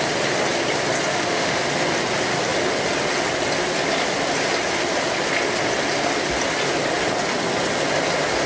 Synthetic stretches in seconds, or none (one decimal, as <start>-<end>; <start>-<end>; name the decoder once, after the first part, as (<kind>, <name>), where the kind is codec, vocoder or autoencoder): 1.1-1.6 (autoencoder, DAC-VAE)